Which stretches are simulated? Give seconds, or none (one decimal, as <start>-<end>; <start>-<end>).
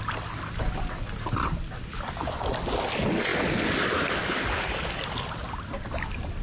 none